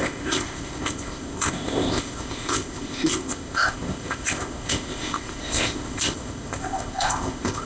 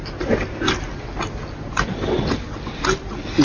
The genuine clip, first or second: second